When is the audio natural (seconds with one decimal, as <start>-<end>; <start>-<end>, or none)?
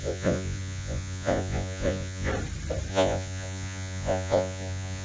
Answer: 2.3-2.9